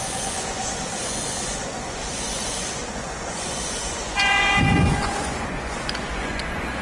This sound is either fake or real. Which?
fake